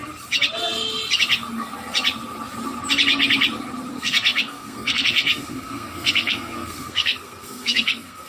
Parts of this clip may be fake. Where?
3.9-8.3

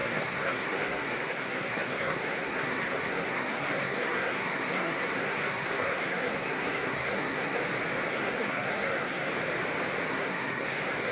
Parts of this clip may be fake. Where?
0.0-7.6; 8.1-9.3; 10.1-11.1

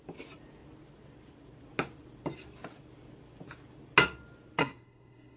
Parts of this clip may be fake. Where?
4.6-5.4

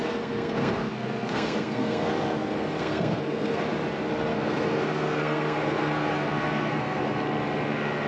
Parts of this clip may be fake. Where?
0.0-3.6; 4.3-7.0

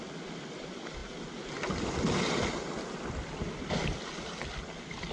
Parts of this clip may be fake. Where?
none

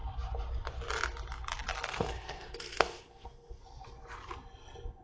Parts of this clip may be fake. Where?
1.9-3.6

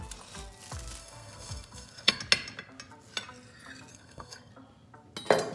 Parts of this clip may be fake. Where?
1.0-2.2; 3.9-4.5